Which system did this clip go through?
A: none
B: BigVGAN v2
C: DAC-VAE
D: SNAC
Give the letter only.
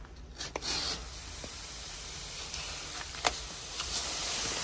A